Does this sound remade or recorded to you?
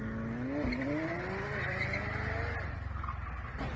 recorded